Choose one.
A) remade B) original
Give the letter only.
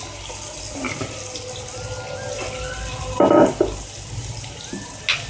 B